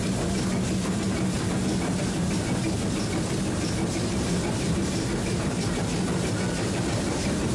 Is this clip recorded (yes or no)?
yes